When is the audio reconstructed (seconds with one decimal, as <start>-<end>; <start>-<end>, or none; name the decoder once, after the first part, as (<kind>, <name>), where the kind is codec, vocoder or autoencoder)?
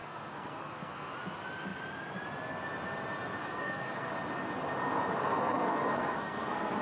0.0-1.1 (codec, SNAC); 3.4-4.1; 5.2-6.8